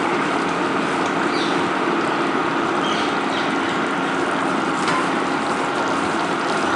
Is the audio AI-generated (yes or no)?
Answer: yes